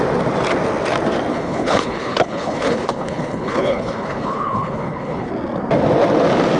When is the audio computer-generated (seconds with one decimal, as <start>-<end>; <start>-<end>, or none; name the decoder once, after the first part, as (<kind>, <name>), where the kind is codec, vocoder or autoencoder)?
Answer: 1.3-5.3 (codec, HILCodec)